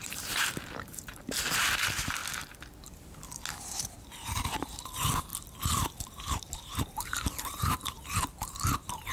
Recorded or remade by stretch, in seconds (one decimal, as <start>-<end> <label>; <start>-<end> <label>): 0.0-2.2 remade; 2.2-3.6 recorded; 3.6-5.3 remade; 5.3-6.0 recorded; 6.0-9.1 remade